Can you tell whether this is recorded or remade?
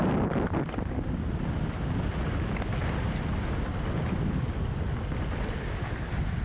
recorded